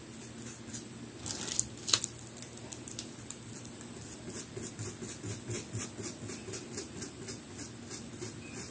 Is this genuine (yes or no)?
yes